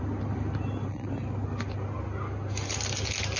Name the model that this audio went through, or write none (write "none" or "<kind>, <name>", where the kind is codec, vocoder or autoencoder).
none